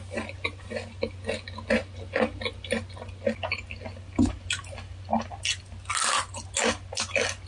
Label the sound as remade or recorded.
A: recorded